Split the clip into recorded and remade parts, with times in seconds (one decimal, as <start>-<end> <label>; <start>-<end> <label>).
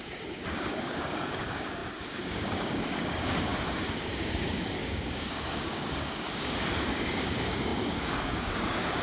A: 0.0-9.0 remade